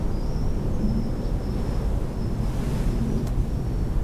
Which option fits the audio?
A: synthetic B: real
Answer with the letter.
B